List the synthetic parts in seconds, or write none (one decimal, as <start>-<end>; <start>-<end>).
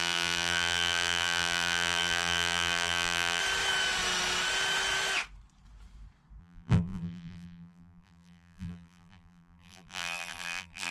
0.0-3.4; 6.4-10.9